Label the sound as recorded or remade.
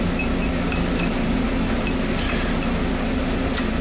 recorded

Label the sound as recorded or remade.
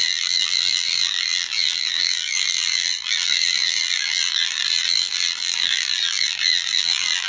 remade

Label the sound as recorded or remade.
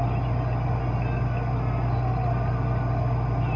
recorded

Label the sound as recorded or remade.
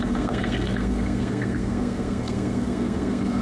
remade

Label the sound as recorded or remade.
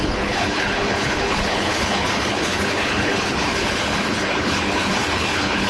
remade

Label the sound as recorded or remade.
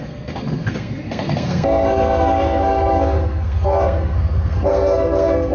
remade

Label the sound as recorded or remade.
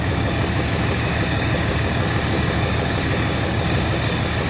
remade